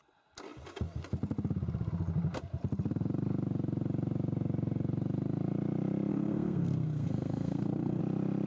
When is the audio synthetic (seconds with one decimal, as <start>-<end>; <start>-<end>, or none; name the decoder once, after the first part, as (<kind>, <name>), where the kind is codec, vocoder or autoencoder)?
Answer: 6.1-8.0 (codec, SNAC)